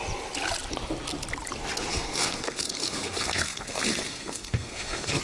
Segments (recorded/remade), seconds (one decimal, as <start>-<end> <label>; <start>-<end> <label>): 0.0-1.9 recorded; 1.9-5.2 remade